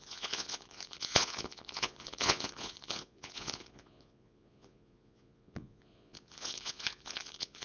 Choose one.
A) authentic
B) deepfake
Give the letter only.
B